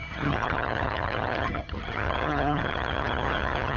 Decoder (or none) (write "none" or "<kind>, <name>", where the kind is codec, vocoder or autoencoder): vocoder, HiFi-GAN